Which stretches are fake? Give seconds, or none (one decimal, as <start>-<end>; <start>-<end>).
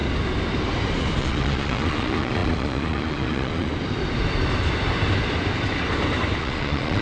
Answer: 1.2-3.7; 6.4-7.0